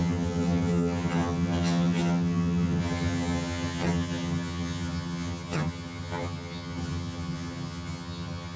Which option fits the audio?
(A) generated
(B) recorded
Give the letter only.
A